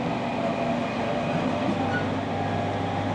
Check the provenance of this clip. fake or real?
real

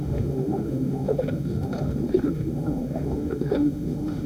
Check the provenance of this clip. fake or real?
fake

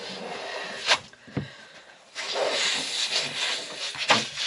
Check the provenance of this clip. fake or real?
real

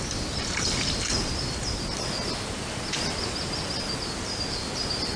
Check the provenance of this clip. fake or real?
real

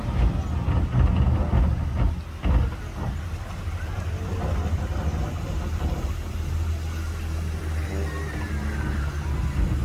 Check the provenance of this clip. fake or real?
real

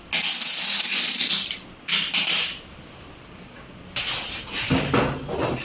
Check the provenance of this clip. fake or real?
real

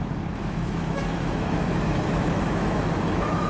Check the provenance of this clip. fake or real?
fake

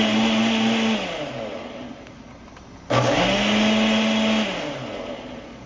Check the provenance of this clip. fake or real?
real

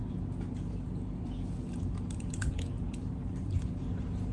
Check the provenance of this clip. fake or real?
fake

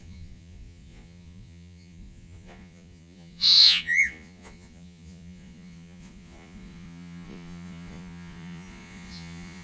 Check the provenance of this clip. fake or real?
fake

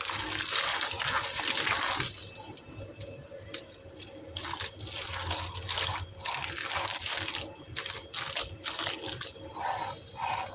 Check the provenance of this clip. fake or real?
real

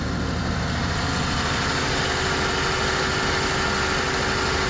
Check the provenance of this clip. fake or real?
real